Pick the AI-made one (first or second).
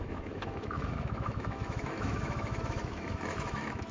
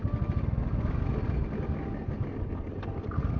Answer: first